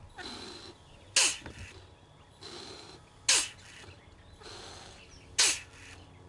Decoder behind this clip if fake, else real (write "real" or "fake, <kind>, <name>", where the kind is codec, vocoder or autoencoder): real